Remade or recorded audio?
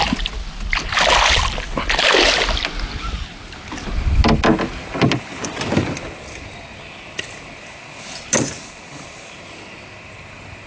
recorded